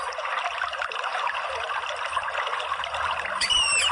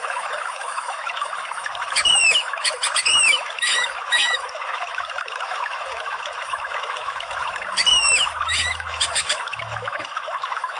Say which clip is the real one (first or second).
first